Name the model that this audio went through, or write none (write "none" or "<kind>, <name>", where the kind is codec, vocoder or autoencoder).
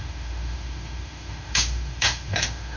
autoencoder, DAC-VAE